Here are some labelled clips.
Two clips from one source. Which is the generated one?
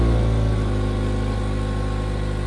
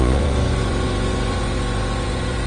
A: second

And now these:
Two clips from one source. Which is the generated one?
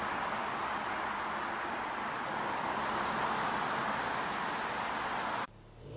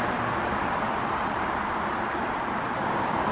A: second